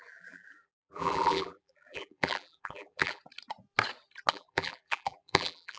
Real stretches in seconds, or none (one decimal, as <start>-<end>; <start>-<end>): 3.2-4.3